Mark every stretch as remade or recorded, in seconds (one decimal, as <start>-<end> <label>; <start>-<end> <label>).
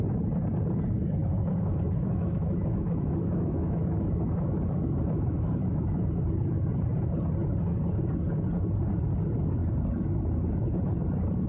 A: 0.0-1.2 recorded; 1.2-6.0 remade; 6.0-11.5 recorded